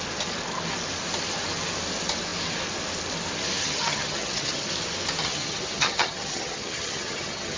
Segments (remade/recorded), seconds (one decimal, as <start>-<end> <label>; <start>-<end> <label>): 0.0-3.6 recorded; 3.6-4.7 remade; 4.7-5.2 recorded; 5.2-7.6 remade